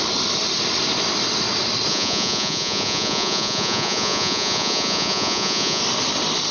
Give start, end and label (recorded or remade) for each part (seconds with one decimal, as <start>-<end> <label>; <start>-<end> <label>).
0.0-1.9 recorded; 1.9-5.8 remade; 5.8-6.5 recorded

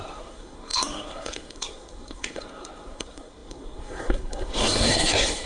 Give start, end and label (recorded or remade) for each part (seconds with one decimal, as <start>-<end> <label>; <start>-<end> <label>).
0.0-5.5 remade